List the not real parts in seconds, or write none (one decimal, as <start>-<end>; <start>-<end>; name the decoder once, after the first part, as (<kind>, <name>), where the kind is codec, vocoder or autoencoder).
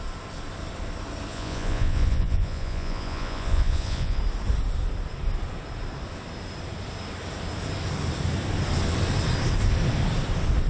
1.3-4.2 (vocoder, Vocos)